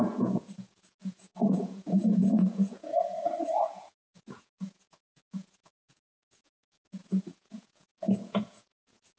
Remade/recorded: remade